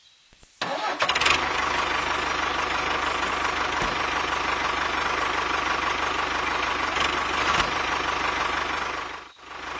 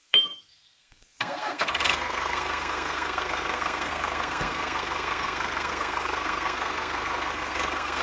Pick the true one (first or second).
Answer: first